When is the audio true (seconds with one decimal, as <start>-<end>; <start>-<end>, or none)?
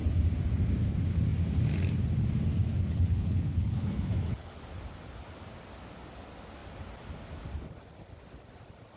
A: 0.0-2.6; 4.6-9.0